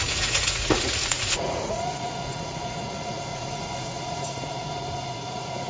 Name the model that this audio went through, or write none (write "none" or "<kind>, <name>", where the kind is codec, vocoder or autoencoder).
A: vocoder, Vocos